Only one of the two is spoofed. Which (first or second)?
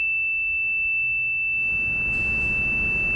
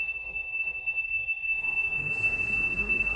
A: second